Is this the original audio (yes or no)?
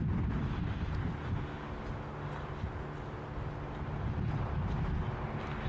yes